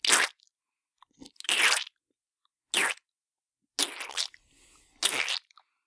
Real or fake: real